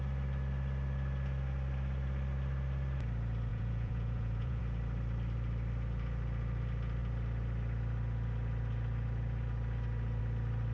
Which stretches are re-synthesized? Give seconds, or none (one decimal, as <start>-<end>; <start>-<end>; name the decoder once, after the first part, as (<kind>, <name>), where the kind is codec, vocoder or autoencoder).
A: 3.5-4.6 (vocoder, Vocos)